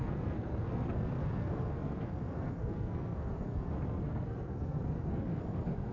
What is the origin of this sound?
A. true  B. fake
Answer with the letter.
B